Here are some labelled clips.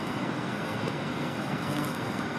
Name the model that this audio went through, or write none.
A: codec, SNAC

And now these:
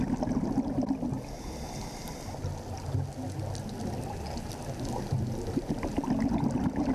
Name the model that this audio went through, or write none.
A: none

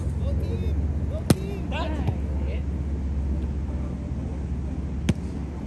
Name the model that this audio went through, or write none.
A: none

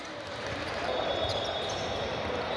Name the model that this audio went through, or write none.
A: none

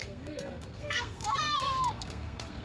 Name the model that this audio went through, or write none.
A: codec, SNAC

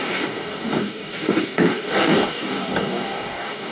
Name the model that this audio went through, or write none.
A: codec, DAC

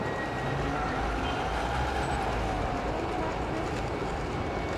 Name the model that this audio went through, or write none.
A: none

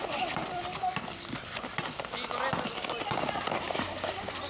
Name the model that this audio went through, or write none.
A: none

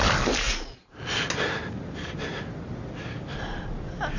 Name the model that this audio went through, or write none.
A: none